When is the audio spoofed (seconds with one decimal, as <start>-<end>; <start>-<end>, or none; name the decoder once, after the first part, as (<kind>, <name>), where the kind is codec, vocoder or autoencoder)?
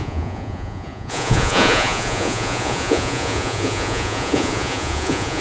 0.0-5.4 (vocoder, Vocos)